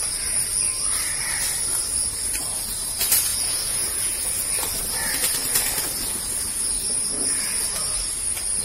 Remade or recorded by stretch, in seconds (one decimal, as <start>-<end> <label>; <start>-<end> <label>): 0.0-3.3 recorded; 3.3-4.3 remade; 4.3-8.6 recorded